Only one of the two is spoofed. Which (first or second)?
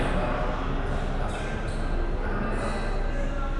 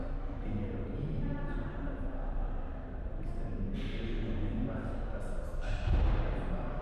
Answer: second